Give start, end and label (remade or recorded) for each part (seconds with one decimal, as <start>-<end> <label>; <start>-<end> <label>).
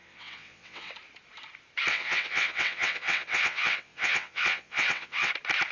0.0-0.9 remade; 0.9-1.9 recorded; 1.9-5.3 remade; 5.3-5.7 recorded